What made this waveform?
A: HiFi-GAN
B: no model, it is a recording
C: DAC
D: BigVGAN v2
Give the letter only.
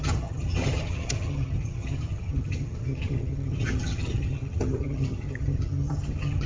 A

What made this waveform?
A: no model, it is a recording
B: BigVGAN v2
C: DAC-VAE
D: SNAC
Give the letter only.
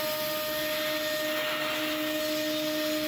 A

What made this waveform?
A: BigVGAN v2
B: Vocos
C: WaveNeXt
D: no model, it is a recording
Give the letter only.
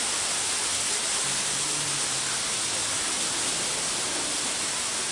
D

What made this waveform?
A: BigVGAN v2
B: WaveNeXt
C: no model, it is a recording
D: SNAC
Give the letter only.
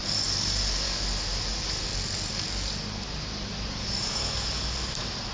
C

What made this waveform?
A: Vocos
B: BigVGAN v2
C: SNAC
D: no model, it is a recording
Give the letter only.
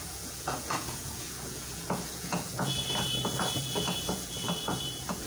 A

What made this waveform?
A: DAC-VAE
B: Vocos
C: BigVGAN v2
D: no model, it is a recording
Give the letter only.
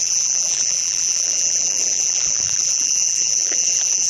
C